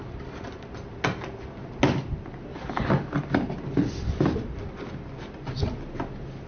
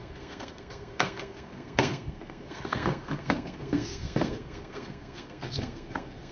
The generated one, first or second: second